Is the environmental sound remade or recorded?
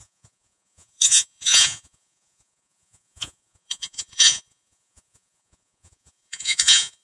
remade